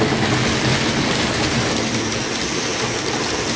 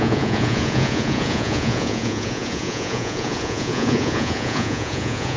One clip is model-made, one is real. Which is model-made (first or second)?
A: second